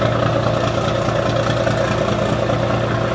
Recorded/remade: recorded